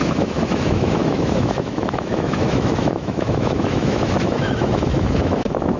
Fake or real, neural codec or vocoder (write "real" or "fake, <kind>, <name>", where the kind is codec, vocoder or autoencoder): fake, autoencoder, DAC-VAE